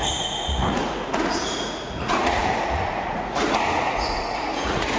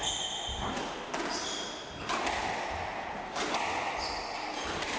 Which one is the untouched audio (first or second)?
second